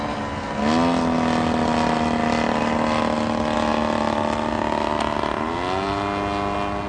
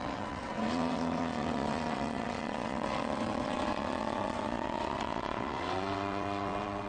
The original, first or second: first